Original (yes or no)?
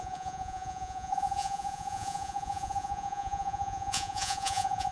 no